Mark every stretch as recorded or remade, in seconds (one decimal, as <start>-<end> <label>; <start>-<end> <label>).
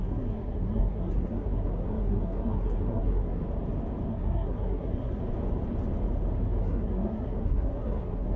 0.0-3.4 remade; 3.4-4.1 recorded; 4.1-5.2 remade; 5.2-6.6 recorded; 6.6-8.4 remade